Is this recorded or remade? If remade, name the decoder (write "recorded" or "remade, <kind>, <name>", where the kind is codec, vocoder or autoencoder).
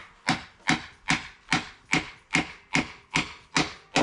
recorded